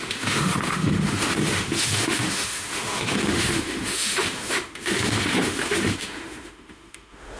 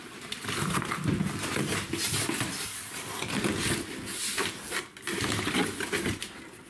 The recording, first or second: second